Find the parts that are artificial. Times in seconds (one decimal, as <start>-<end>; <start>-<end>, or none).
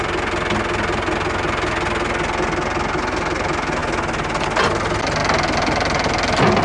none